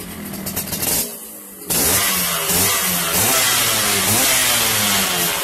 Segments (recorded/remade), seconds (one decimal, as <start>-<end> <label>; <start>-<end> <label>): 0.0-5.4 recorded